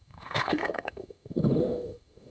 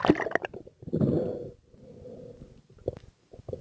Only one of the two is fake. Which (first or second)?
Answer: first